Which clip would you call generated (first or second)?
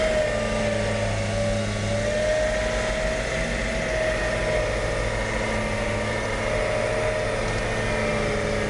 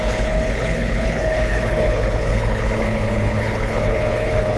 second